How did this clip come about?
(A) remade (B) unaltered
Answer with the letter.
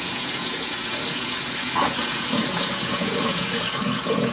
A